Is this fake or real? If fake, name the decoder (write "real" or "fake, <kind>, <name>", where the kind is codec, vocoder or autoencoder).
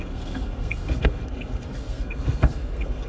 fake, codec, SNAC